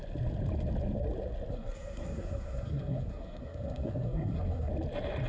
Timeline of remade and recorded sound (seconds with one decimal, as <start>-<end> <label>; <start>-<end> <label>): 0.0-1.5 recorded; 1.5-4.7 remade; 4.7-5.3 recorded